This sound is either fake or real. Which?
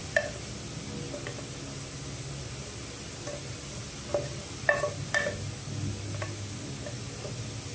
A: real